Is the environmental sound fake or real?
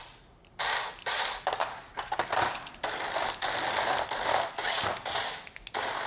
real